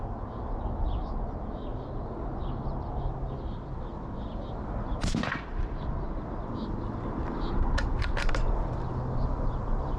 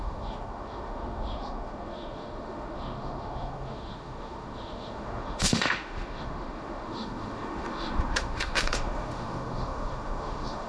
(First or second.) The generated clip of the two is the second